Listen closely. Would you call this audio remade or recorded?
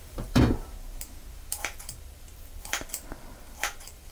remade